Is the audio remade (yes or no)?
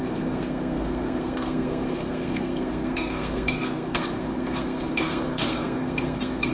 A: yes